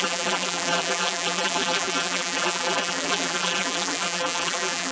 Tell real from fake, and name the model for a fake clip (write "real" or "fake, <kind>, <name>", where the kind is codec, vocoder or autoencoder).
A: fake, vocoder, BigVGAN v2